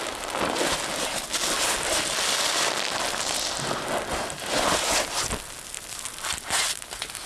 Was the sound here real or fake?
real